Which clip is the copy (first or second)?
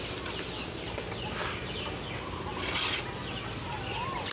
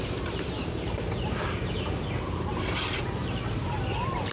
second